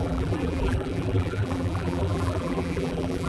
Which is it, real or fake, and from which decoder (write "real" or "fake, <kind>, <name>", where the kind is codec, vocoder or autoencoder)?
fake, vocoder, BigVGAN v2